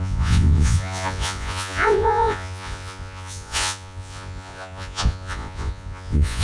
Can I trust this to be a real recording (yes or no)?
no